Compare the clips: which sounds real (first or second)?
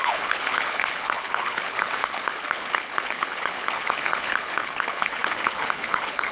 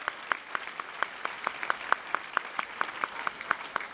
second